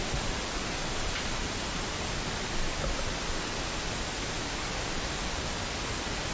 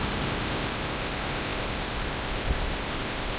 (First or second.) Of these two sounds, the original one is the first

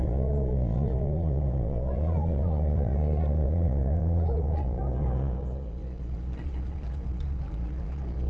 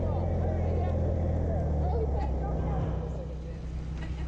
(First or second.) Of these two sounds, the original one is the second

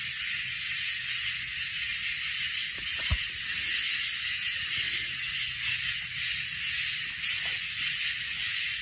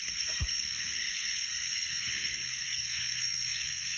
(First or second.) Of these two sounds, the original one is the first